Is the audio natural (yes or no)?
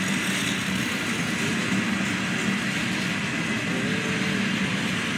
yes